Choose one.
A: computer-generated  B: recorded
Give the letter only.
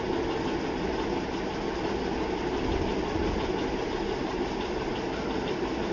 B